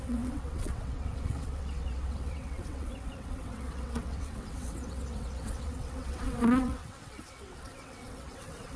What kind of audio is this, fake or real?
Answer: fake